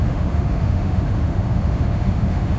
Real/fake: fake